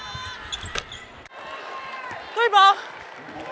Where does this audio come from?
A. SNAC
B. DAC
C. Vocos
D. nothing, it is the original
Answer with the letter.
D